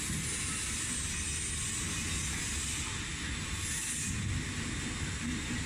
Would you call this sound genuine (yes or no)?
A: yes